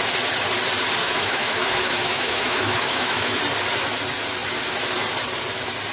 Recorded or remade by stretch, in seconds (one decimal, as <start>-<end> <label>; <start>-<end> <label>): 0.0-1.0 recorded; 1.0-3.4 remade; 3.4-5.9 recorded